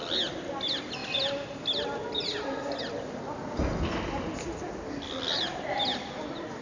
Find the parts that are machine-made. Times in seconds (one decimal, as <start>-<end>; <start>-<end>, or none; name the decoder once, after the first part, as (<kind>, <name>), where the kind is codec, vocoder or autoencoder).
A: none